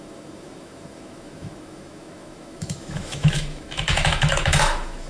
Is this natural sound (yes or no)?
no